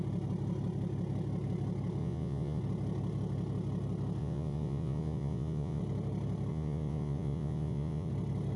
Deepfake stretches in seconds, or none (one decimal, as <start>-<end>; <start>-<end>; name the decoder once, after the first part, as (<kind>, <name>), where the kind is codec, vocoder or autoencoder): 2.0-2.6 (vocoder, Vocos); 4.2-5.8; 6.5-8.1